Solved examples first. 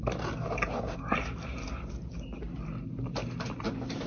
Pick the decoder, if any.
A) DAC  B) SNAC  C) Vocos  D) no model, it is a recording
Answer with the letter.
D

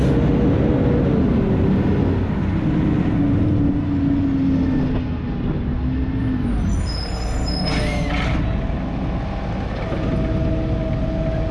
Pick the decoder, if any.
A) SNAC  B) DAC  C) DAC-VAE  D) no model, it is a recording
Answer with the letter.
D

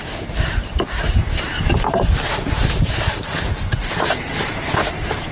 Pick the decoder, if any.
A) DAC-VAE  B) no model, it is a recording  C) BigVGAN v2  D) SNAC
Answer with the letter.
B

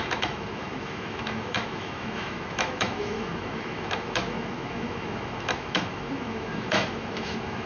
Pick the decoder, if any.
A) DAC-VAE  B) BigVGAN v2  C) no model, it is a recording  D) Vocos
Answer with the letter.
A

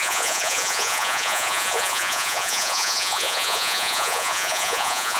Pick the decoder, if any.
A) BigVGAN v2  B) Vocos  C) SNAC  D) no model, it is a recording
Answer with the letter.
B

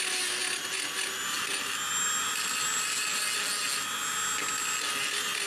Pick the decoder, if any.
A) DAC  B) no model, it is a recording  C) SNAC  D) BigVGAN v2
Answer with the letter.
B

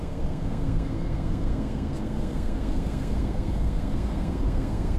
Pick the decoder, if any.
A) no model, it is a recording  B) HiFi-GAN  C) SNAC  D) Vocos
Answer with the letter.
C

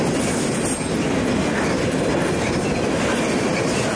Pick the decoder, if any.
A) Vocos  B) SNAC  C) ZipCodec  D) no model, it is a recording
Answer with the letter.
D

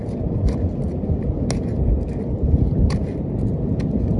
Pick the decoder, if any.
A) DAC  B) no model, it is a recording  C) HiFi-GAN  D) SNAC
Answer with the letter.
B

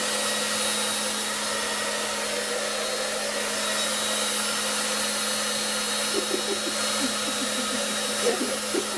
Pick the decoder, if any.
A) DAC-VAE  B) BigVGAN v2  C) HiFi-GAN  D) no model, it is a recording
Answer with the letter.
D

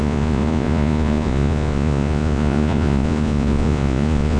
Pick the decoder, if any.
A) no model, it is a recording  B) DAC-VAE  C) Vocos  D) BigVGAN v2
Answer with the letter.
C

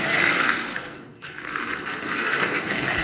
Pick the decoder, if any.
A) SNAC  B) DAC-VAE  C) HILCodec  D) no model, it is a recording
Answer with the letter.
A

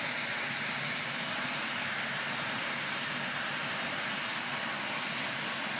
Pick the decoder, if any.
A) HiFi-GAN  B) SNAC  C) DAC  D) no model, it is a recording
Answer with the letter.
D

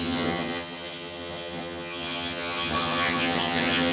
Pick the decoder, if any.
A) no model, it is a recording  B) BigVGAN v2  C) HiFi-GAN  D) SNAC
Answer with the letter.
C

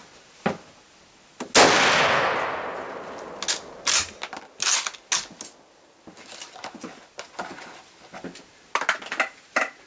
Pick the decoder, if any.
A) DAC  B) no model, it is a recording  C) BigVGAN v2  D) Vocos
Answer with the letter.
B